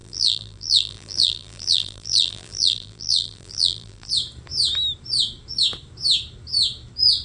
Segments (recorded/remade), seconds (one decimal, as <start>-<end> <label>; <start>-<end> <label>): 0.0-4.1 remade; 4.1-7.2 recorded